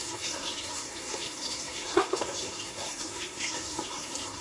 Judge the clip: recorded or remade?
remade